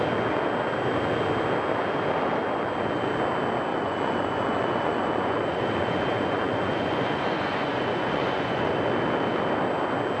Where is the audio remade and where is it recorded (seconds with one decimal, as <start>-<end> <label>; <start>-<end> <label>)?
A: 0.0-3.7 recorded; 3.7-8.7 remade; 8.7-10.2 recorded